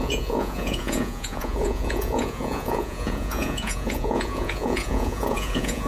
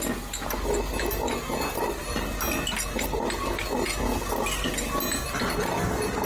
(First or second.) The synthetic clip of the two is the first